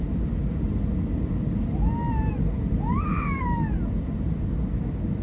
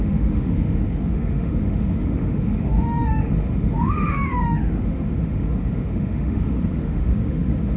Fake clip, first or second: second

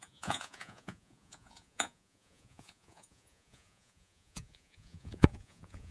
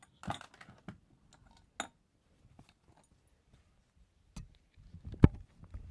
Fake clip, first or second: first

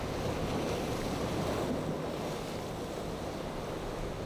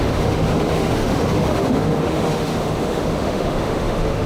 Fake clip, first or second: second